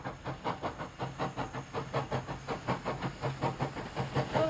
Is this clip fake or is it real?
real